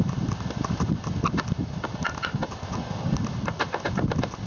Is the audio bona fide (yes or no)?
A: yes